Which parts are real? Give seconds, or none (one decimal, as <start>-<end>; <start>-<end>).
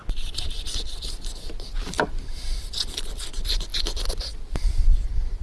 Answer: 0.0-5.4